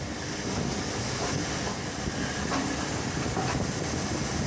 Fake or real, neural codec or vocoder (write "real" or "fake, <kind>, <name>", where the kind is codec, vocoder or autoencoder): real